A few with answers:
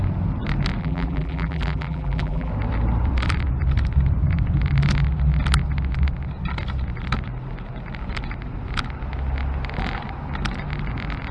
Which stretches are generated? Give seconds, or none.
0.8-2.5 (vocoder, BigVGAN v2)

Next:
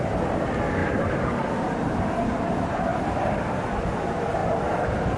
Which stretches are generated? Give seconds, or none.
0.8-1.5 (vocoder, BigVGAN v2); 2.9-3.4; 4.4-5.2

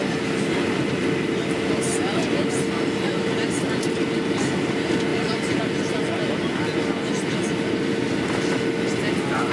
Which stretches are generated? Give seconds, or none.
none

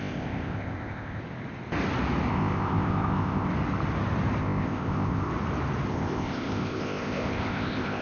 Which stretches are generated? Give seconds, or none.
0.0-1.2 (codec, ZipCodec); 2.3-3.5; 4.4-5.3; 5.9-8.0

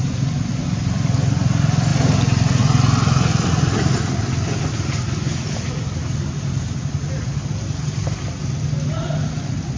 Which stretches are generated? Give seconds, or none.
none